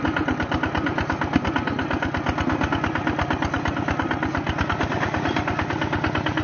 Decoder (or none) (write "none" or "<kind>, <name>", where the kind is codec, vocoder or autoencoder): none